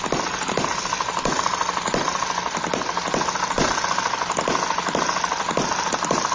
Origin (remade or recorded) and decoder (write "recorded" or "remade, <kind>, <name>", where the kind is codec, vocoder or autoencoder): recorded